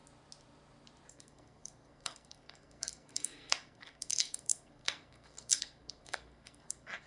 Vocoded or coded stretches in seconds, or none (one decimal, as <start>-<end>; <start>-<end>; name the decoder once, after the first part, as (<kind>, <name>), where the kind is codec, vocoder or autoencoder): 1.1-7.1 (codec, SNAC)